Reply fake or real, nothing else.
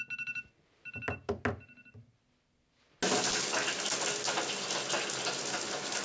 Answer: real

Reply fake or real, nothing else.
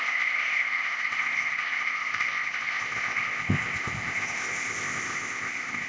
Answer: fake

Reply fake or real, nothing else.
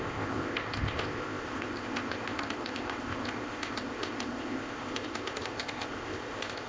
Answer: fake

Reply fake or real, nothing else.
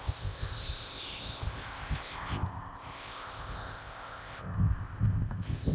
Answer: fake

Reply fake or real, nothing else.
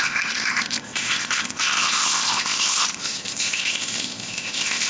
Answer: fake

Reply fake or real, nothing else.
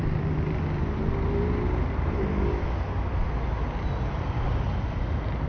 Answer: real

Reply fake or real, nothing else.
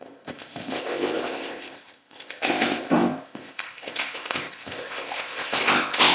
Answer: fake